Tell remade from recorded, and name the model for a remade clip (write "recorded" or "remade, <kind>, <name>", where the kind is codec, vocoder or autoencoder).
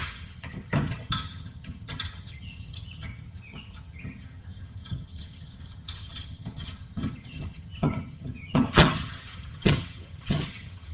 remade, vocoder, HiFi-GAN